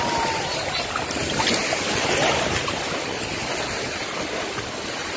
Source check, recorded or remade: recorded